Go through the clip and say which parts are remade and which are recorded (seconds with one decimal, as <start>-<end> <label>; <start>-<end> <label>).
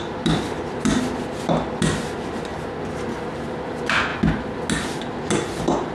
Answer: 0.0-5.9 recorded